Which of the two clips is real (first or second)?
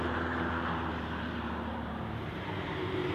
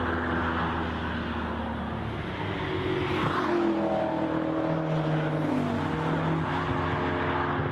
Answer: second